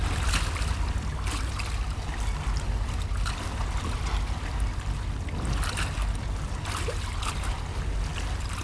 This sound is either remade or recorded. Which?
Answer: recorded